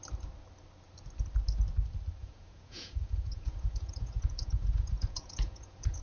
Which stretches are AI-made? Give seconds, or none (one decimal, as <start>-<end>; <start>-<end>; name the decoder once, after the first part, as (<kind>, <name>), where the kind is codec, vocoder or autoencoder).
2.2-6.0 (vocoder, Vocos)